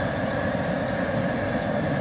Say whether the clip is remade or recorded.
recorded